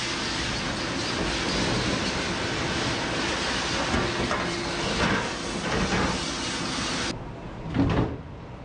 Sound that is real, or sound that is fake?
real